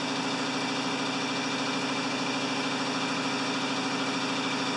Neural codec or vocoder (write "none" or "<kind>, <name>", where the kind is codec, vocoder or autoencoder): none